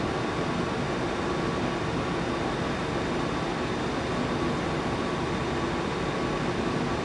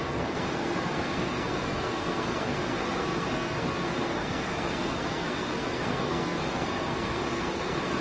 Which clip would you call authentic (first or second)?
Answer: first